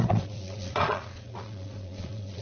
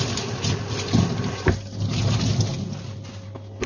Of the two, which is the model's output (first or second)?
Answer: first